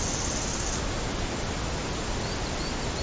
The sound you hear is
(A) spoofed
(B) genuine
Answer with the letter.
B